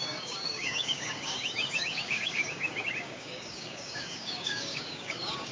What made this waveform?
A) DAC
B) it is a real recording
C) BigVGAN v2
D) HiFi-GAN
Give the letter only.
A